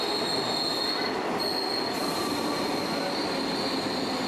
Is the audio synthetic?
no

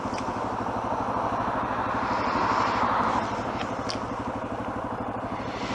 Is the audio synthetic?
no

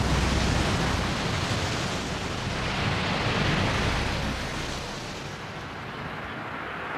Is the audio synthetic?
no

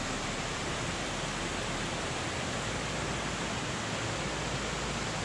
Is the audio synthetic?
no